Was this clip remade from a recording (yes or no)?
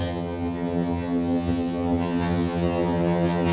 yes